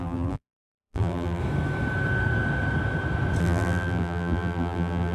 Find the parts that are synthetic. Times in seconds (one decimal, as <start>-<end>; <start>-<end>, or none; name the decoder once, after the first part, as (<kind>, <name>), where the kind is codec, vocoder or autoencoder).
0.0-1.4 (vocoder, BigVGAN v2); 3.4-5.1